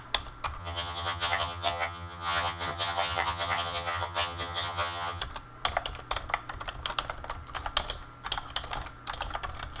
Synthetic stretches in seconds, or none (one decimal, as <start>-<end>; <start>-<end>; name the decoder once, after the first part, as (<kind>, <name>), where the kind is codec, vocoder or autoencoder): 0.6-5.2 (vocoder, HiFi-GAN)